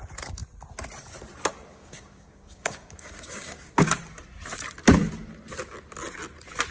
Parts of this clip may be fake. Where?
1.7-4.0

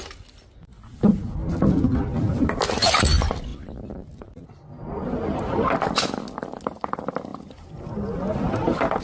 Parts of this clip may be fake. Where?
none

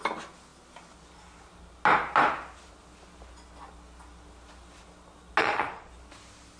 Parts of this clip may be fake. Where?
5.4-5.9

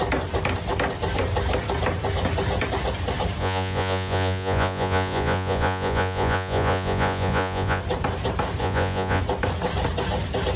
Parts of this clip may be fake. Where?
3.4-7.8; 8.6-9.2